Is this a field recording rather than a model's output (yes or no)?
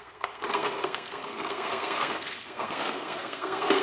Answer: no